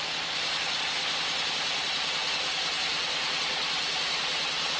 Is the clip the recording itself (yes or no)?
yes